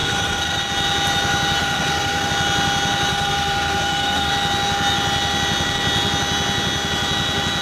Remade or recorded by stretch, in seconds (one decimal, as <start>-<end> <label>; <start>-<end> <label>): 0.0-0.6 remade; 0.6-1.6 recorded; 1.6-2.3 remade; 2.3-3.1 recorded; 3.1-4.3 remade; 4.3-7.6 recorded